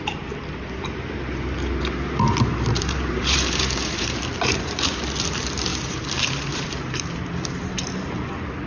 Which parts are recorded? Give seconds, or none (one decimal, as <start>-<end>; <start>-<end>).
0.0-2.5; 5.0-5.7; 7.1-8.7